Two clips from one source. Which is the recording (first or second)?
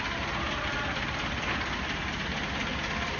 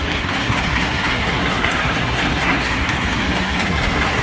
first